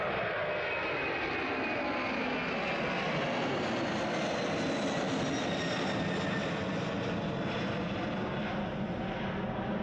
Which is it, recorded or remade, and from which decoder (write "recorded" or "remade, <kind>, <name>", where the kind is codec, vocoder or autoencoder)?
recorded